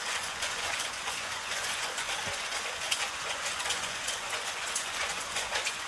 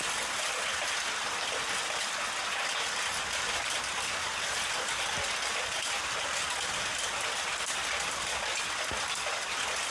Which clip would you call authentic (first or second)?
second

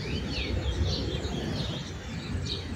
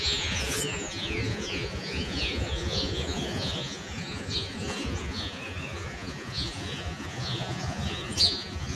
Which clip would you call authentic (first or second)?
first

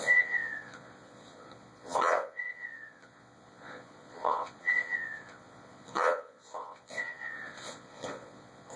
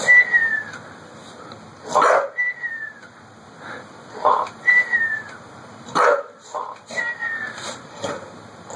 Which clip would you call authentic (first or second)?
second